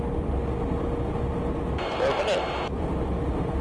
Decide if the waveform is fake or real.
real